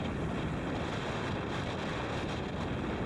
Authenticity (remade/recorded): recorded